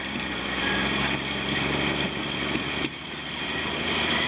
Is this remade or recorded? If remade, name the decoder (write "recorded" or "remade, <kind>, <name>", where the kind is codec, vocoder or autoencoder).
remade, vocoder, BigVGAN v2